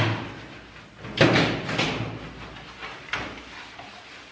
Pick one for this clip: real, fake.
real